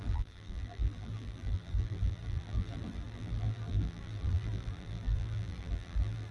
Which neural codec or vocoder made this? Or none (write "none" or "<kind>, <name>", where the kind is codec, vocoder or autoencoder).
vocoder, BigVGAN v2